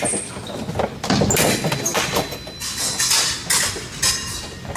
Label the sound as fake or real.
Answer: real